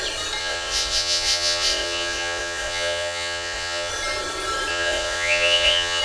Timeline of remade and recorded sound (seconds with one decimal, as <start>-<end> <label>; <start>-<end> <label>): 0.0-0.4 recorded; 0.4-3.9 remade; 3.9-4.7 recorded; 4.7-6.0 remade